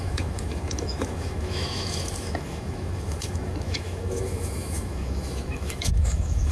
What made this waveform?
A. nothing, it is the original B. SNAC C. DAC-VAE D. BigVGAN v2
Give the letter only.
C